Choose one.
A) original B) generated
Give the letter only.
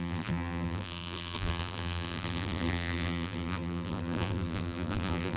B